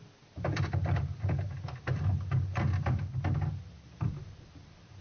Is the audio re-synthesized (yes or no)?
no